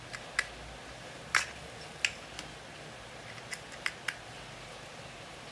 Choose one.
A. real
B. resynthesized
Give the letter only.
A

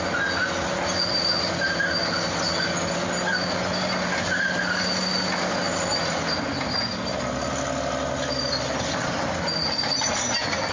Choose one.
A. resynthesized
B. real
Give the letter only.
B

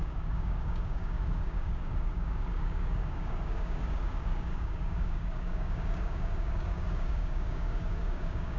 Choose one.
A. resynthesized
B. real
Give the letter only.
A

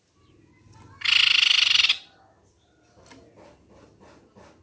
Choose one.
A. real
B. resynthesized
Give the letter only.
A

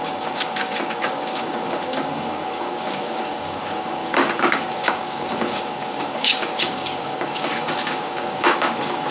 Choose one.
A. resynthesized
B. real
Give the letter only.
A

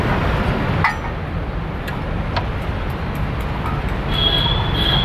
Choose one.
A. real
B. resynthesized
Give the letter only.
A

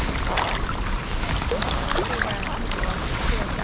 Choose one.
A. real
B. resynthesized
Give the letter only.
A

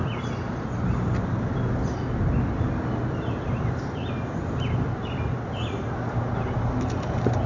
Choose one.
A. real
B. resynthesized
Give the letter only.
A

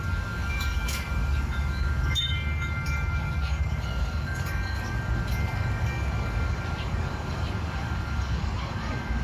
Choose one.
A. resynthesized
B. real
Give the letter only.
A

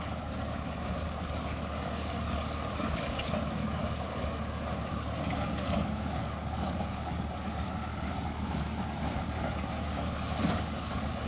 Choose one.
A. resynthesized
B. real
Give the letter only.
A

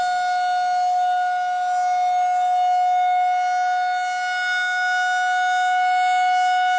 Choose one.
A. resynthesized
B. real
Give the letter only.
B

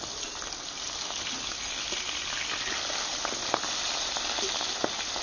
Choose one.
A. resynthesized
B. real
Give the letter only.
B